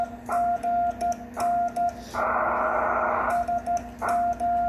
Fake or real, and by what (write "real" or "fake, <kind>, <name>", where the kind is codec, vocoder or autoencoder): real